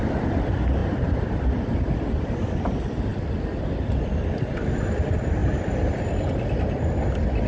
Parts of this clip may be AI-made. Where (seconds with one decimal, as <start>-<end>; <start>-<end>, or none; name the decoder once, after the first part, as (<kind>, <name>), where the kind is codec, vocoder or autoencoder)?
none